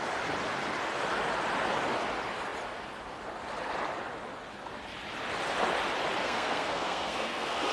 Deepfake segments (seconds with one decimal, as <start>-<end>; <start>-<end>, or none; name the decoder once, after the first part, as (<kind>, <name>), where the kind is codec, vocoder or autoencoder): 6.2-7.7 (codec, SNAC)